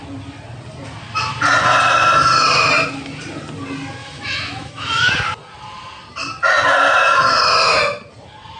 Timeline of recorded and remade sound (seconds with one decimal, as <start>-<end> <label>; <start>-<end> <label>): 0.0-4.0 recorded; 4.0-5.1 remade; 5.1-8.6 recorded